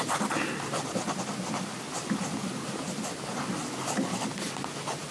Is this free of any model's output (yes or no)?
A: yes